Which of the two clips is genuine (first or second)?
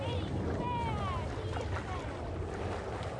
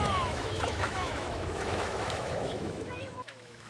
first